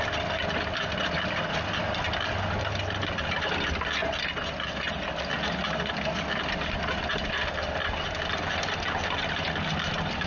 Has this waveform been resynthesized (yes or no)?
no